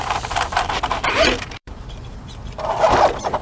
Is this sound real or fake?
fake